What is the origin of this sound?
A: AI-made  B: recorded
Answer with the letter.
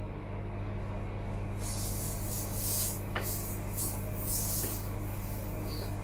A